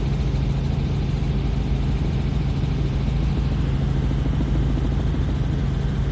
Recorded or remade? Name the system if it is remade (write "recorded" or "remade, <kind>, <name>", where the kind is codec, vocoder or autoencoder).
recorded